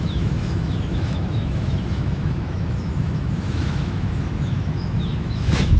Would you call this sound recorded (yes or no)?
no